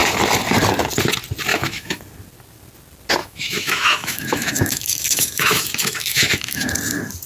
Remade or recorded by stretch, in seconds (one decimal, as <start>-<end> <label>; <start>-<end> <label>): 0.0-1.5 recorded; 1.5-2.0 remade; 2.0-3.2 recorded; 3.2-6.7 remade; 6.7-7.3 recorded